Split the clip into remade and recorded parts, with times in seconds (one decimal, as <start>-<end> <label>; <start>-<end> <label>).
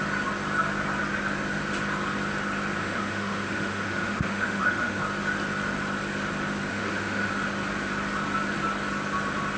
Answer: 0.0-2.8 recorded; 2.8-5.0 remade; 5.0-6.7 recorded; 6.7-7.3 remade; 7.3-9.6 recorded